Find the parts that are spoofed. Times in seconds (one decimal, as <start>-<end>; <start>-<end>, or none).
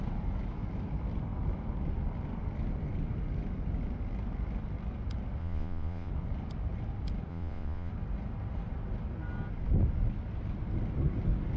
5.4-6.1; 7.3-7.9